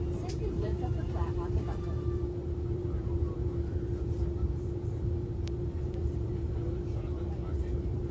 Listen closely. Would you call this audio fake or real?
fake